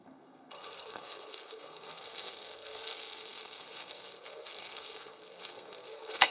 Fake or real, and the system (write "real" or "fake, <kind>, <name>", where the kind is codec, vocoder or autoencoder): fake, codec, SNAC